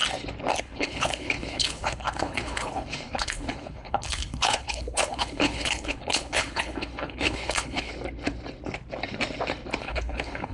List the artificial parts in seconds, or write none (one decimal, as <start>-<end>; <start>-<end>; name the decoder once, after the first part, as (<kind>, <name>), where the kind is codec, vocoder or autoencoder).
0.6-7.9 (codec, HILCodec); 9.8-10.5